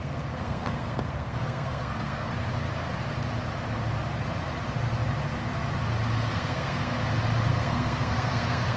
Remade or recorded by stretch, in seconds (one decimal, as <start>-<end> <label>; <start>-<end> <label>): 0.0-2.3 remade; 2.3-6.3 recorded; 6.3-6.9 remade; 6.9-7.5 recorded; 7.5-8.8 remade